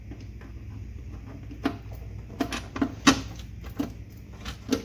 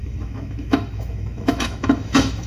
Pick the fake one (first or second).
second